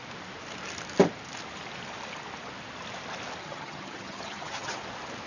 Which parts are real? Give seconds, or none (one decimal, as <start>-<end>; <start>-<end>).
0.0-3.4; 4.8-5.3